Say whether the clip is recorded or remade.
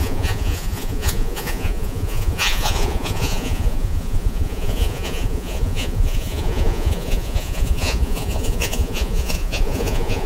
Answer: remade